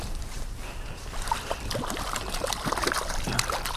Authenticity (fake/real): fake